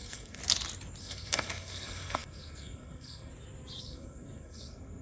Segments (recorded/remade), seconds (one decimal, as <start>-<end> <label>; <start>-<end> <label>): 0.0-0.4 remade; 0.4-1.0 recorded; 1.0-3.3 remade; 3.3-3.8 recorded; 3.8-5.0 remade